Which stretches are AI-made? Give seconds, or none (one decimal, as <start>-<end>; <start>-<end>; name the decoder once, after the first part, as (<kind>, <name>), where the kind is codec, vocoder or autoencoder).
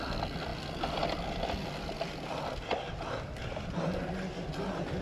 none